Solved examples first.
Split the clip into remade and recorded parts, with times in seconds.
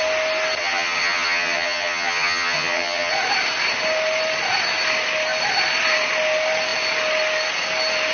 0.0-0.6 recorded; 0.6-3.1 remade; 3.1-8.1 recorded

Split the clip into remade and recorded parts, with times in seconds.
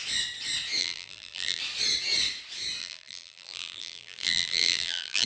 0.0-0.8 recorded; 0.8-1.6 remade; 1.6-2.8 recorded; 2.8-5.3 remade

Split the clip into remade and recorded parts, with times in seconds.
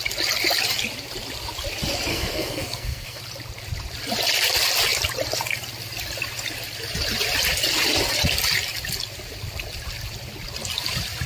0.0-2.1 recorded; 2.1-3.2 remade; 3.2-11.3 recorded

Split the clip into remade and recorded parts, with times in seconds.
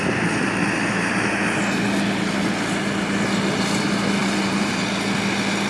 0.0-4.2 recorded; 4.2-4.7 remade; 4.7-5.7 recorded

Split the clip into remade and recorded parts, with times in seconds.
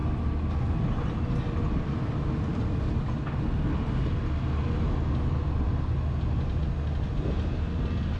0.0-8.2 recorded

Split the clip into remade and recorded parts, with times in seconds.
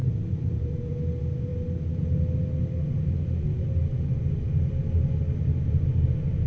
0.0-0.9 remade; 0.9-6.5 recorded